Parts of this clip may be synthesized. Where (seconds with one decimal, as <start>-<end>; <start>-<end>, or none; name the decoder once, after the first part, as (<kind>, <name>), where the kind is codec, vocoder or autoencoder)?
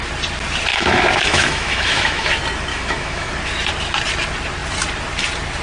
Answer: 0.7-2.3 (autoencoder, DAC-VAE); 2.7-3.3